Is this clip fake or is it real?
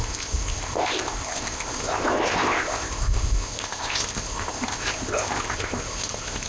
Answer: fake